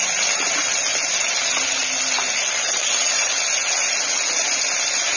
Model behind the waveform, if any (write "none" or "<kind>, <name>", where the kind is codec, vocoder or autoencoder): none